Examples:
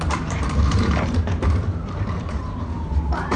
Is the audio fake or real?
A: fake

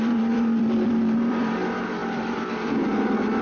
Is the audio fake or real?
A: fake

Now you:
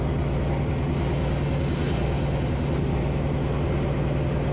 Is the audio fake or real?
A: real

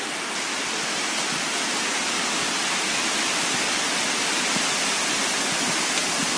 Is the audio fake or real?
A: real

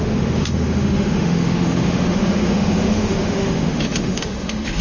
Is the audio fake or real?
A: fake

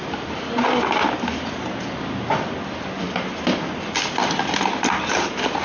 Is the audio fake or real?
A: real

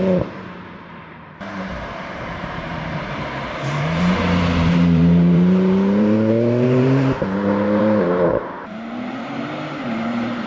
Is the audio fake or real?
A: fake